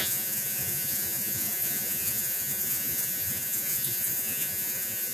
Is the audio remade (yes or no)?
yes